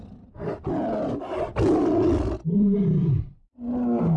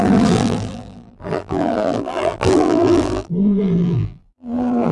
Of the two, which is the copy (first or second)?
second